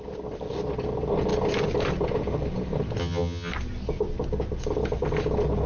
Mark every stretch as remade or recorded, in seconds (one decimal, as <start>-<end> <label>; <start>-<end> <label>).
0.0-3.0 recorded; 3.0-3.5 remade; 3.5-5.7 recorded